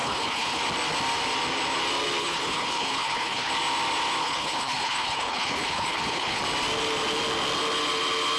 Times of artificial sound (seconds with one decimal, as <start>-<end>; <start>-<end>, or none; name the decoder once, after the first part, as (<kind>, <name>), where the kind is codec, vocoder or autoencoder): 0.0-0.6 (codec, HILCodec); 2.2-3.5; 4.2-6.4